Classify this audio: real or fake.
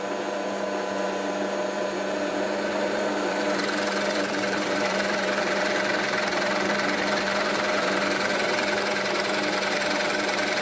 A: fake